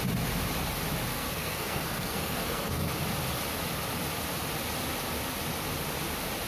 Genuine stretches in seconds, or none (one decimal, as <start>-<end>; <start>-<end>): 0.0-1.1; 2.9-6.5